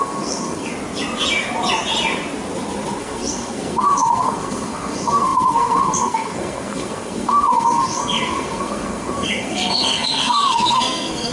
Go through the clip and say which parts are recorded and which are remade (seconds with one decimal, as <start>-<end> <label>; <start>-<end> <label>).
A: 0.0-0.7 remade; 0.7-3.0 recorded; 3.0-11.3 remade